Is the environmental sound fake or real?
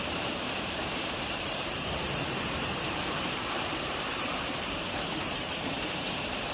fake